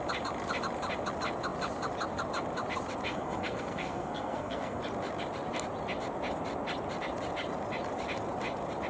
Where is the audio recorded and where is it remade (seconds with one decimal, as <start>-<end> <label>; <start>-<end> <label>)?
0.0-3.1 recorded; 3.1-4.8 remade; 4.8-8.9 recorded